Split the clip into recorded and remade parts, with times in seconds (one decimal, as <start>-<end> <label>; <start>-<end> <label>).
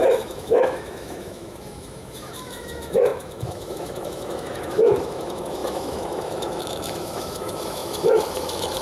0.0-8.8 remade